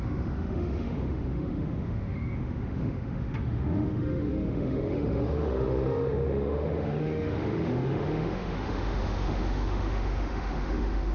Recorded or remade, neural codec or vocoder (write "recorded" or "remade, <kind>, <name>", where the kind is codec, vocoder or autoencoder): remade, autoencoder, DAC-VAE